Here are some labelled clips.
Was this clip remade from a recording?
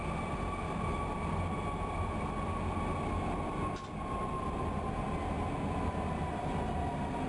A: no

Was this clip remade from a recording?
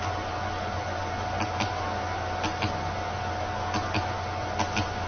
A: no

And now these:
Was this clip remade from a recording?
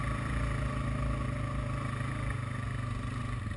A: no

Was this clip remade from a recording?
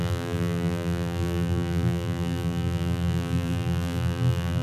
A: yes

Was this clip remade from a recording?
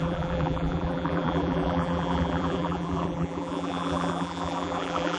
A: yes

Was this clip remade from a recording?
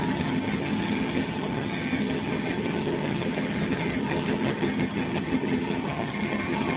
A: yes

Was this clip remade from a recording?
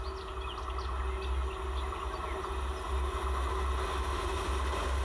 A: no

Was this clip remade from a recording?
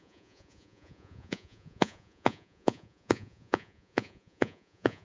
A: yes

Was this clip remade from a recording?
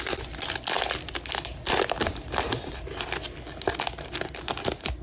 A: no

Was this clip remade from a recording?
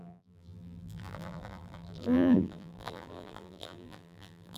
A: yes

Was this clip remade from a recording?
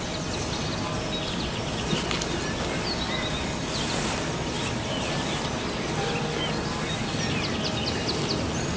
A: no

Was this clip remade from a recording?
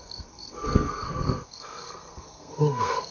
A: yes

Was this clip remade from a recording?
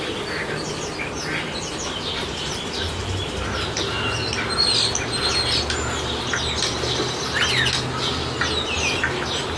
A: no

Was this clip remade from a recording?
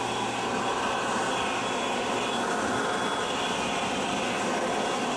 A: no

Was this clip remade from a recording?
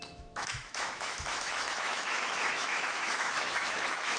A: yes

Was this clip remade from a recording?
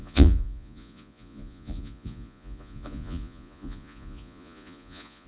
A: yes